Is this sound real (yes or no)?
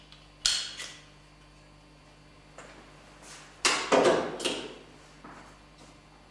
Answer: yes